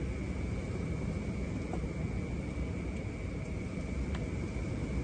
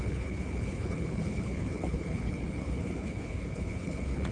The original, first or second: first